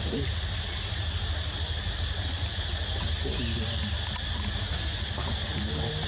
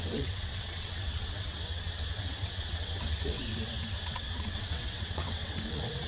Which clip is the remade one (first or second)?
second